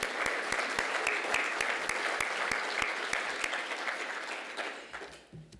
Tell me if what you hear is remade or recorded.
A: recorded